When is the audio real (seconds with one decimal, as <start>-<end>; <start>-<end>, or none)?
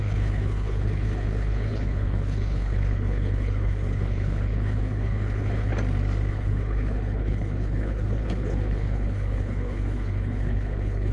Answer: 5.7-6.3